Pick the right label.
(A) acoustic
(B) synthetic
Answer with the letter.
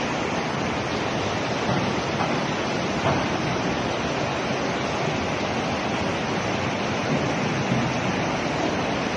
A